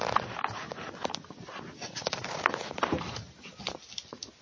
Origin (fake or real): real